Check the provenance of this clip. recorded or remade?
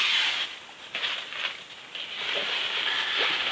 recorded